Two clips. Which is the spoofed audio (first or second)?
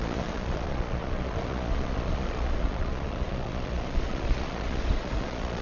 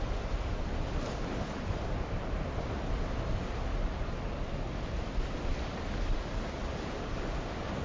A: first